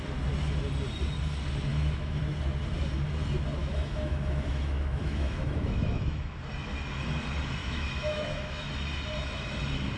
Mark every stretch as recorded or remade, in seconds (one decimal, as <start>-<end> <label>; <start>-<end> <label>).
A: 0.0-1.7 recorded; 1.7-2.2 remade; 2.2-3.6 recorded; 3.6-6.4 remade; 6.4-7.6 recorded; 7.6-8.7 remade; 8.7-10.0 recorded